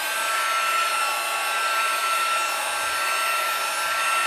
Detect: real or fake real